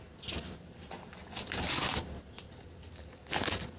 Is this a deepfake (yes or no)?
no